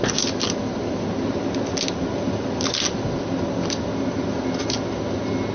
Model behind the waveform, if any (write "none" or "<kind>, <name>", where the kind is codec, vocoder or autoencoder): none